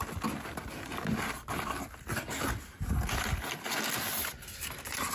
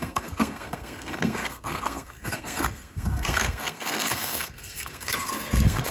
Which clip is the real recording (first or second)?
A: first